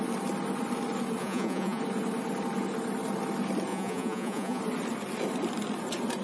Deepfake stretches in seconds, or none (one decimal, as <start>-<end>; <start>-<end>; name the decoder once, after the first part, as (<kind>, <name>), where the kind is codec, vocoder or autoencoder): 1.2-1.8 (vocoder, Vocos); 3.7-4.6